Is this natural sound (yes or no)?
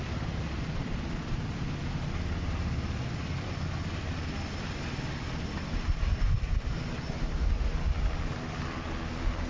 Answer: yes